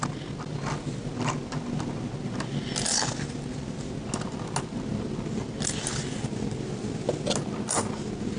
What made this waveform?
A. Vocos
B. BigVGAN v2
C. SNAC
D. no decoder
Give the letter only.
D